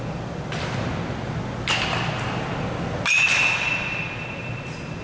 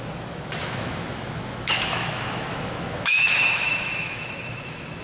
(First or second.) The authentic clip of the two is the first